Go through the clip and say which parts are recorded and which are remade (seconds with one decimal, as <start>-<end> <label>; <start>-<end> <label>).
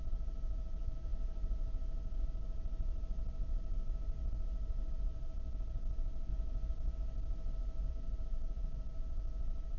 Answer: 0.0-1.1 remade; 1.1-4.9 recorded; 4.9-6.3 remade; 6.3-7.9 recorded; 7.9-9.8 remade